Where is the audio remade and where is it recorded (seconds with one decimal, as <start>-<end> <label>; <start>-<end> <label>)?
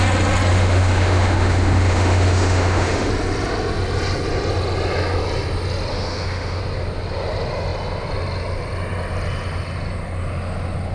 0.0-0.5 recorded; 0.5-3.1 remade; 3.1-5.9 recorded; 5.9-6.6 remade; 6.6-10.9 recorded